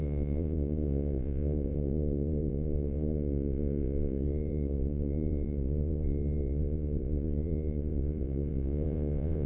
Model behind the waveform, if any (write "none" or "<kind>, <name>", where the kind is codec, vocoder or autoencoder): vocoder, Vocos